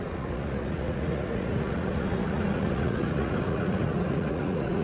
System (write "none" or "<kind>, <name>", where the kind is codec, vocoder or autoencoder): vocoder, Vocos